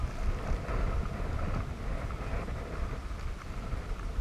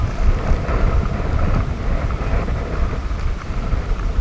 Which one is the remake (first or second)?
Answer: second